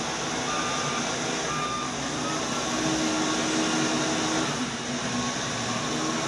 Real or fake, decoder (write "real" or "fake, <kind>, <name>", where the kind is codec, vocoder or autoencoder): real